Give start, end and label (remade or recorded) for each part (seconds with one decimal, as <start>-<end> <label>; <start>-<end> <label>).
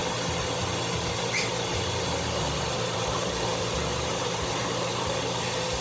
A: 0.0-3.9 recorded; 3.9-5.0 remade; 5.0-5.8 recorded